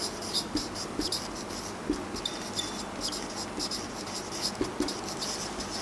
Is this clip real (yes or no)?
yes